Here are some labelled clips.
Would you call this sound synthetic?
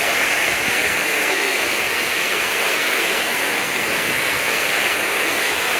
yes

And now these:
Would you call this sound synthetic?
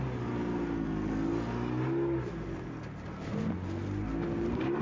no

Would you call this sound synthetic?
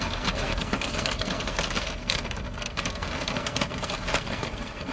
yes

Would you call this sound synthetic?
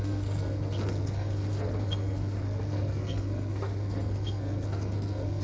yes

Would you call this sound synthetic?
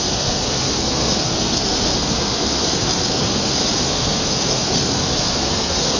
yes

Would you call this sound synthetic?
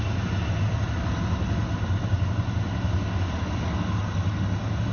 no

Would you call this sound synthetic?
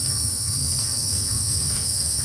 yes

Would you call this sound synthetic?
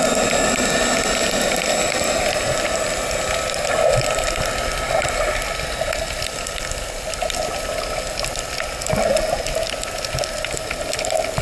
no